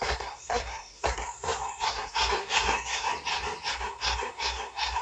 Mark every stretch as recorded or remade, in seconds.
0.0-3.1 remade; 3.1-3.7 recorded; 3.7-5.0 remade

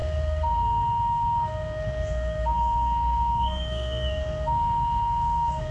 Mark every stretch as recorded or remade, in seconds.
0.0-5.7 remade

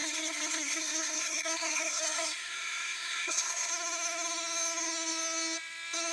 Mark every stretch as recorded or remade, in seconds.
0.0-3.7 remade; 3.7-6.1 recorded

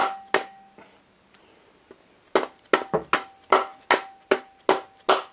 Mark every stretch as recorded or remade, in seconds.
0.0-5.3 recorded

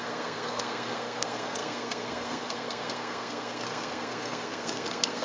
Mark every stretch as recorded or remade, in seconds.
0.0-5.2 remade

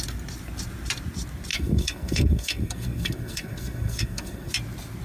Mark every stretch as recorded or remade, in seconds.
0.0-1.5 recorded; 1.5-4.5 remade; 4.5-5.0 recorded